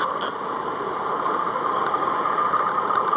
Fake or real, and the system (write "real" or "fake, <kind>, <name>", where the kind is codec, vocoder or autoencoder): real